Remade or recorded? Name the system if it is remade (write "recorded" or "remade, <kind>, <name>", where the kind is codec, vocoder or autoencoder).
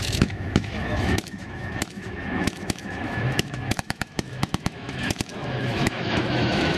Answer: remade, autoencoder, DAC-VAE